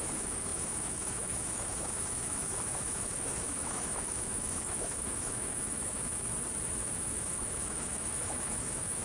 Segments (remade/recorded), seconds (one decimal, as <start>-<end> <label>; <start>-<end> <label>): 0.0-6.3 remade; 6.3-6.8 recorded; 6.8-9.0 remade

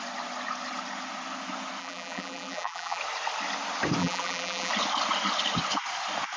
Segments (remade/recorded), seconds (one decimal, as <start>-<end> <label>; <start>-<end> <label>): 0.0-1.8 recorded; 1.8-3.0 remade; 3.0-4.0 recorded; 4.0-4.7 remade; 4.7-6.4 recorded

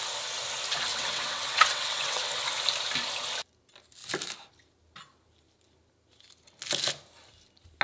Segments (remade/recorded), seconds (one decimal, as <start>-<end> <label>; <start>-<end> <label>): 0.0-0.9 recorded; 0.9-2.2 remade; 2.2-7.8 recorded

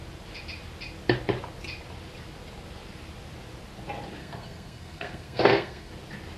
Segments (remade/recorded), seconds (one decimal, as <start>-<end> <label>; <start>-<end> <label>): 0.0-4.2 recorded; 4.2-5.9 remade; 5.9-6.4 recorded

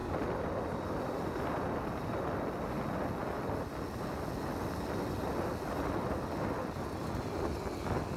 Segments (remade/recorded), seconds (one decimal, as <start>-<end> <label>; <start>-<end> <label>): 0.0-8.2 recorded

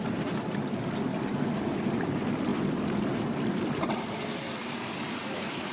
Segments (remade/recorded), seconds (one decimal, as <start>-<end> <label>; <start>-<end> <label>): 0.0-1.1 recorded; 1.1-1.7 remade; 1.7-5.7 recorded

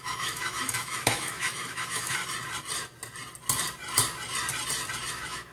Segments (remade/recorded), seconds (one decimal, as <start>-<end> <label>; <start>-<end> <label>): 0.0-2.2 remade; 2.2-5.1 recorded; 5.1-5.5 remade

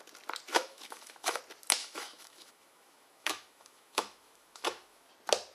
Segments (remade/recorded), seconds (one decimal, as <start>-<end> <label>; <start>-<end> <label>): 0.0-0.5 recorded; 0.5-1.4 remade; 1.4-1.8 recorded; 1.8-5.1 remade; 5.1-5.5 recorded